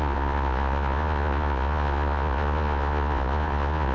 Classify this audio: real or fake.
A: fake